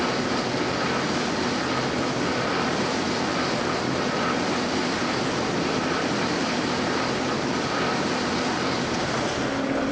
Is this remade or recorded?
remade